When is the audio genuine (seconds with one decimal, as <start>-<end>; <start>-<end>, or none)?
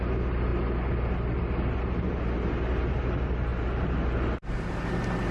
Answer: 0.0-5.3